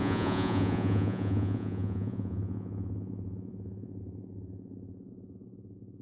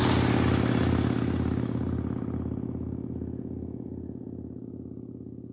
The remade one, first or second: first